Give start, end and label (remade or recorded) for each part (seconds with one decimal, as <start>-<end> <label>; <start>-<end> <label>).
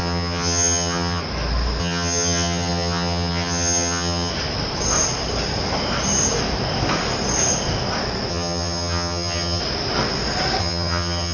0.0-1.2 remade; 1.2-1.8 recorded; 1.8-4.3 remade; 4.3-8.3 recorded; 8.3-9.6 remade; 9.6-10.6 recorded; 10.6-11.3 remade